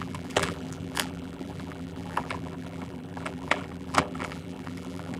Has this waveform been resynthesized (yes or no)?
yes